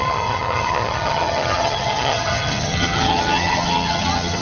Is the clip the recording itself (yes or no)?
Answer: no